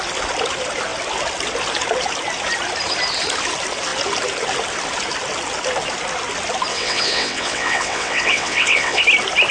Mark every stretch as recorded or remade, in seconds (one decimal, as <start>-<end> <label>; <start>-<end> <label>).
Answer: 0.0-6.7 recorded; 6.7-9.0 remade; 9.0-9.5 recorded